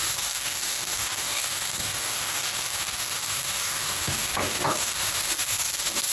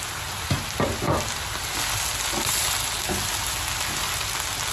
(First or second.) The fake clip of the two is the first